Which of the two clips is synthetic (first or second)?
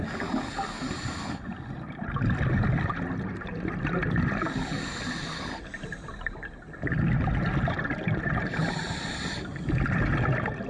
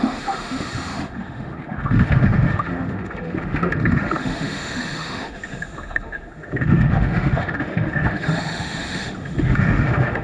second